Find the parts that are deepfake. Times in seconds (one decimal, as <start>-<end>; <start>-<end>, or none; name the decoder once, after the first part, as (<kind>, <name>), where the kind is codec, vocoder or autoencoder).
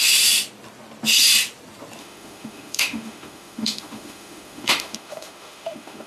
2.0-6.1 (autoencoder, DAC-VAE)